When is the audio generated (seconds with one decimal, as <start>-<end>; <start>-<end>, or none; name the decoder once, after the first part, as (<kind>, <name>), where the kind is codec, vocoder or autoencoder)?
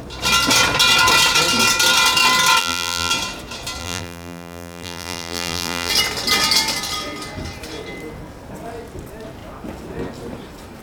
2.6-3.1 (vocoder, BigVGAN v2); 3.8-5.9